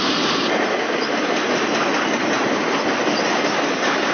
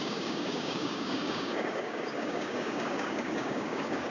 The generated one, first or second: second